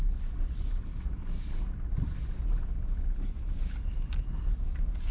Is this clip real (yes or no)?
yes